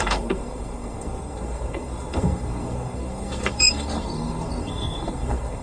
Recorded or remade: remade